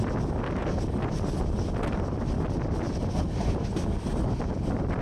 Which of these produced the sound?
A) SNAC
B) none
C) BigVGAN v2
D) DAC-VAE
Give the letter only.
B